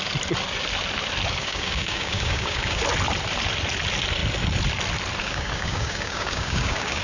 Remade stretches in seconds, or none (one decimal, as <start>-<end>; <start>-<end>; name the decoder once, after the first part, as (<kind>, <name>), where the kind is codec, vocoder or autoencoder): 1.4-2.8 (codec, DAC); 5.2-7.0